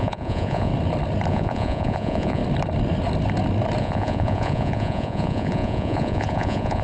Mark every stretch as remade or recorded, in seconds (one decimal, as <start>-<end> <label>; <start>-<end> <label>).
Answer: 0.0-0.7 remade; 0.7-1.3 recorded; 1.3-2.4 remade; 2.4-3.8 recorded; 3.8-6.8 remade